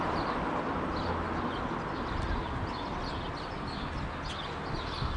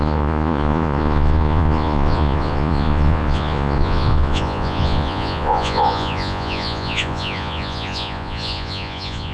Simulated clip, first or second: second